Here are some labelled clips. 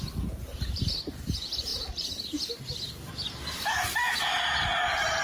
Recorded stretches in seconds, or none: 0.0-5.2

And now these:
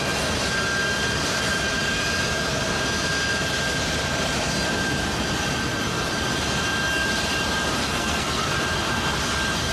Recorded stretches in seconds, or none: 0.0-7.8; 8.5-9.7

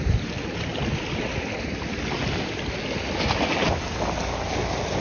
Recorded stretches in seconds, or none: 0.0-5.0

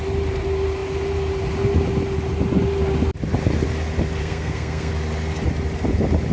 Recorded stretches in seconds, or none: 0.0-4.2; 4.9-6.3

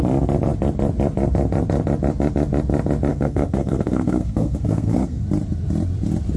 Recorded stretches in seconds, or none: 0.0-3.1; 5.2-6.4

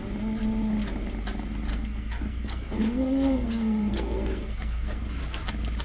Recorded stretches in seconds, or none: 0.0-1.7; 5.2-5.8

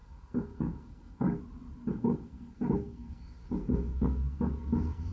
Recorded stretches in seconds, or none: 1.4-1.9

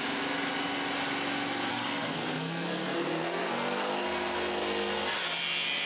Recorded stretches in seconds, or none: 0.0-1.7; 5.2-5.9